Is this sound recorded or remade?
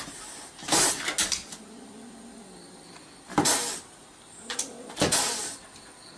recorded